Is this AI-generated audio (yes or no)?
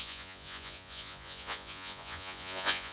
yes